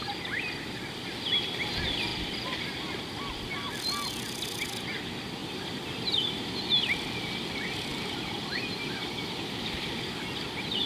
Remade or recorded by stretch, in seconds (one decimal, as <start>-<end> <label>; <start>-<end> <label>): 0.0-5.4 recorded; 5.4-6.6 remade; 6.6-10.9 recorded